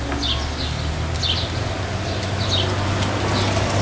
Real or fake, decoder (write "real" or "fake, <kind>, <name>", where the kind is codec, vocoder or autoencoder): real